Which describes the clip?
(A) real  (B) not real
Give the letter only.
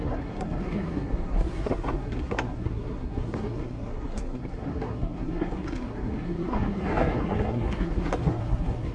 B